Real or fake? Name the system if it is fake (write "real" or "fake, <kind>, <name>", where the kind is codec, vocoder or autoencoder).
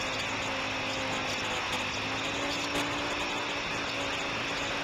real